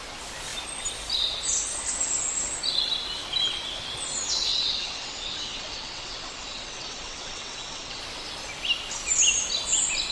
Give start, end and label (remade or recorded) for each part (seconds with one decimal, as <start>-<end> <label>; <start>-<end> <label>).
0.0-4.5 recorded; 4.5-8.0 remade; 8.0-10.1 recorded